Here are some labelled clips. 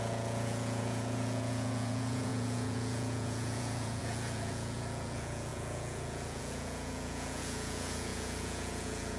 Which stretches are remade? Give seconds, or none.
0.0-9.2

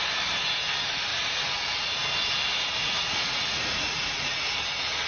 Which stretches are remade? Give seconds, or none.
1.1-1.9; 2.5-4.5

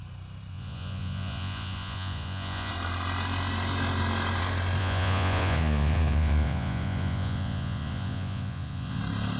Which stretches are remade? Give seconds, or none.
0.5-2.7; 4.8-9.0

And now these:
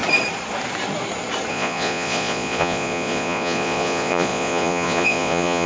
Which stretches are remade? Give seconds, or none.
1.5-5.7